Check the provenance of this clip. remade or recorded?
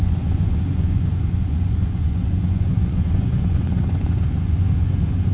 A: remade